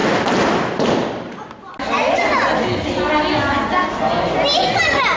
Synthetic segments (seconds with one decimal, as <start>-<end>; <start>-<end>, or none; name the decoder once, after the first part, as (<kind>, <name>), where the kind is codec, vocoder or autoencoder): none